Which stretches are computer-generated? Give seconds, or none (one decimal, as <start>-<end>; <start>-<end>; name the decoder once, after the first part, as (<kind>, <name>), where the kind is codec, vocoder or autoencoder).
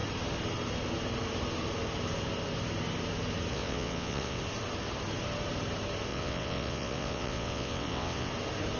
3.5-4.4 (vocoder, WaveNeXt); 6.1-8.3